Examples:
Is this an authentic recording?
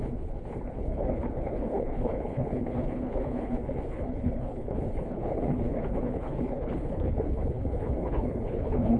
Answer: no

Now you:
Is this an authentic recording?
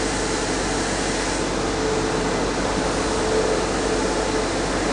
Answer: yes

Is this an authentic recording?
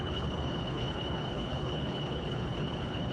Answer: no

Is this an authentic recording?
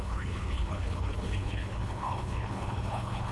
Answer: no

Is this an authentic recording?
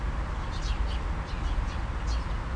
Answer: yes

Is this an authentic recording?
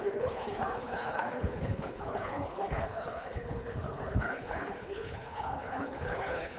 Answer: no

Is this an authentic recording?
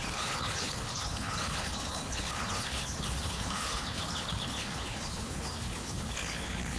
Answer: no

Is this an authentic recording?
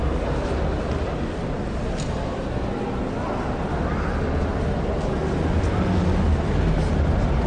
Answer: yes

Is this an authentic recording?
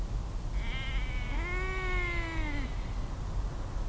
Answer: yes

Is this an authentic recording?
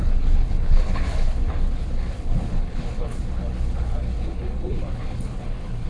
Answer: no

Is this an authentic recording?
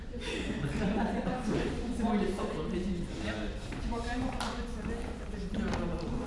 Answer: yes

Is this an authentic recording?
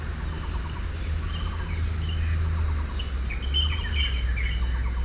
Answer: yes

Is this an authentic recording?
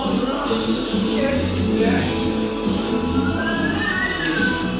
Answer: yes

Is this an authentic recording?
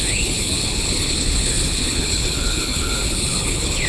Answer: no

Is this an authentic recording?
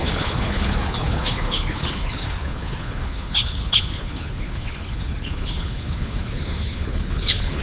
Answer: no